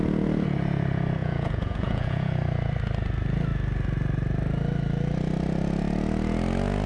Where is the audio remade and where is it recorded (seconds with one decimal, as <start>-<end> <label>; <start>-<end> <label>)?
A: 0.0-1.2 recorded; 1.2-2.3 remade; 2.3-6.9 recorded